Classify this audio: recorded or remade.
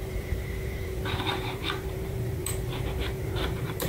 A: remade